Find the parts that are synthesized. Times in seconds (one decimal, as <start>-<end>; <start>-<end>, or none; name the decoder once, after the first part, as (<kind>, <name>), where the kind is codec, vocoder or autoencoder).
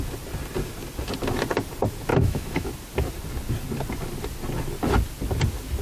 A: 2.1-2.7 (autoencoder, DAC-VAE)